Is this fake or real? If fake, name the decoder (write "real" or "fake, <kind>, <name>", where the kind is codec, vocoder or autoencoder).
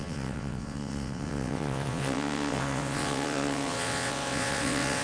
fake, vocoder, WaveNeXt